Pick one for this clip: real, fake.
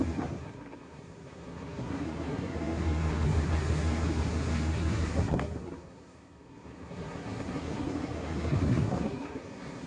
fake